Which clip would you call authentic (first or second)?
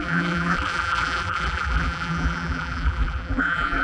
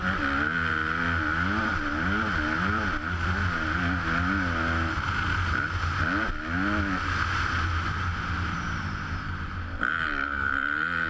second